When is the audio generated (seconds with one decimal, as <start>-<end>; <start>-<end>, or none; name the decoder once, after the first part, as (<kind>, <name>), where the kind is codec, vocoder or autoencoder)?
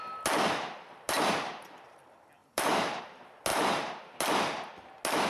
2.4-3.0 (vocoder, BigVGAN v2); 3.5-4.2